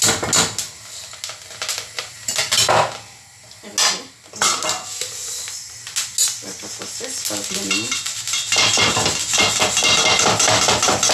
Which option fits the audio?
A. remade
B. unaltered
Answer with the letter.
B